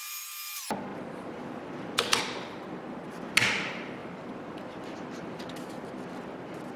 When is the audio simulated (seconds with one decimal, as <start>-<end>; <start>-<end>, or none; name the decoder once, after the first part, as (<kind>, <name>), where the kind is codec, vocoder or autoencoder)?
0.9-2.2 (vocoder, BigVGAN v2); 4.0-5.4